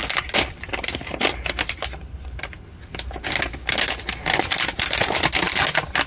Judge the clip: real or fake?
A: real